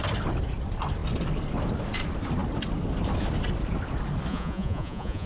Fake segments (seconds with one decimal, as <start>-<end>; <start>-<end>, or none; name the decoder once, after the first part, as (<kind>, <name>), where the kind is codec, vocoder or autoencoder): 4.3-5.3 (vocoder, Vocos)